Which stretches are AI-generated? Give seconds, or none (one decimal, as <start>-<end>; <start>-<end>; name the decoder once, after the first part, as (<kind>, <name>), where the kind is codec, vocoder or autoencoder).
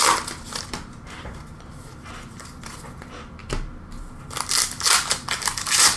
none